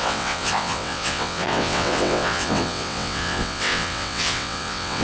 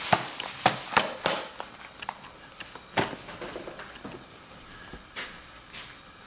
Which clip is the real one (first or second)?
second